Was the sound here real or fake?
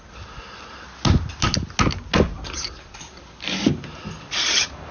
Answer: real